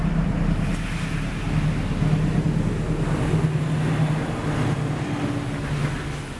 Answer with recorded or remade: recorded